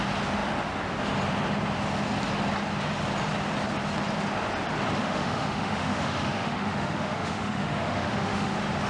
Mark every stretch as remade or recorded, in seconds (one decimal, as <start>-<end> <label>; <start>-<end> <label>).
0.0-5.0 recorded; 5.0-8.5 remade; 8.5-8.9 recorded